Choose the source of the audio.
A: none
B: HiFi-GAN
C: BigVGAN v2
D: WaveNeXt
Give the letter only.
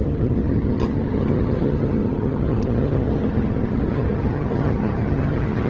B